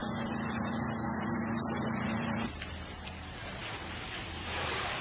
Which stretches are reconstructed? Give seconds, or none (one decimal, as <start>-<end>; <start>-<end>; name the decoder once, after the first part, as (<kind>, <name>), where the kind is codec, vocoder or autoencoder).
0.0-3.6 (vocoder, BigVGAN v2); 4.1-5.0